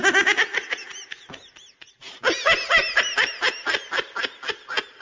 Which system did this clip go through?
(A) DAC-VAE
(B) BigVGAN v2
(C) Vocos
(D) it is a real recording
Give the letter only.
D